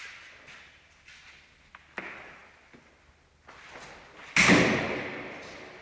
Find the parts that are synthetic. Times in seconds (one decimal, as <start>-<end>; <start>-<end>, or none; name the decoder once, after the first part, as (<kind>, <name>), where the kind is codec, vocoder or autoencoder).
none